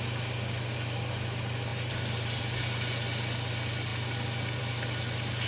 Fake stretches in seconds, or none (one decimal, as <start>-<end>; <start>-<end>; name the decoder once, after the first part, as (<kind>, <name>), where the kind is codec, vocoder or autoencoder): 1.7-2.4 (vocoder, BigVGAN v2)